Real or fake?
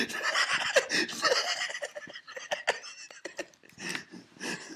real